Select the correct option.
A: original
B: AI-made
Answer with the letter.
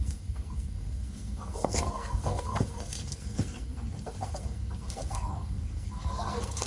B